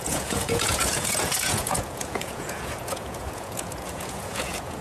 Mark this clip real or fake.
fake